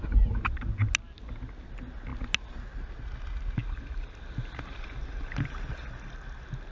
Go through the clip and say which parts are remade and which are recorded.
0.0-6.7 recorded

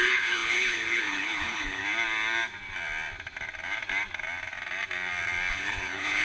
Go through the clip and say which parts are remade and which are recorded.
0.0-1.8 remade; 1.8-5.5 recorded; 5.5-6.2 remade

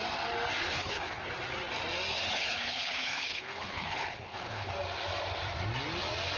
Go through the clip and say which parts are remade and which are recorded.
0.0-0.6 recorded; 0.6-1.3 remade; 1.3-2.1 recorded; 2.1-4.7 remade; 4.7-6.4 recorded